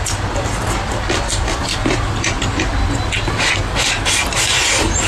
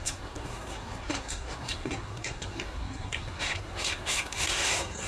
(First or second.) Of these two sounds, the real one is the first